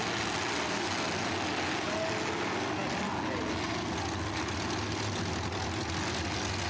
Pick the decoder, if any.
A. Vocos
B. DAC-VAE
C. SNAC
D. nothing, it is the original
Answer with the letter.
D